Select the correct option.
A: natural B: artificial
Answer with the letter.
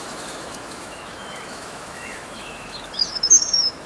B